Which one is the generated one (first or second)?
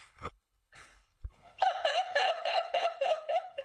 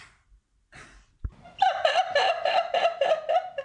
first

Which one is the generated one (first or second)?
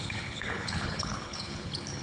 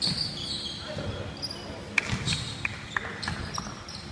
first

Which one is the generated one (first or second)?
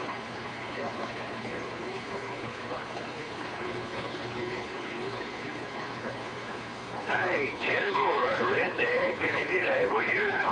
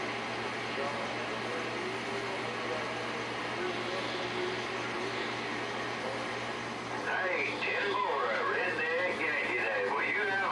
first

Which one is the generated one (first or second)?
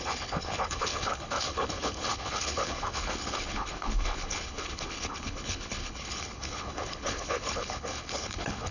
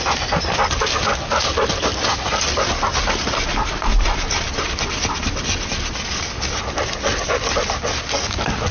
first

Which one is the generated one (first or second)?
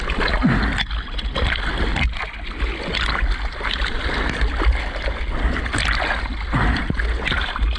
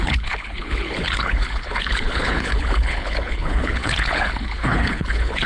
second